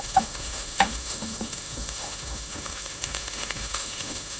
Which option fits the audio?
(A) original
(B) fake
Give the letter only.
B